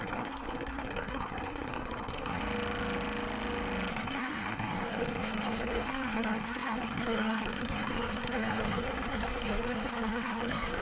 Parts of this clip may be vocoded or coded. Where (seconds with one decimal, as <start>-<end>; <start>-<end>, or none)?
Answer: 0.0-2.4; 3.9-10.8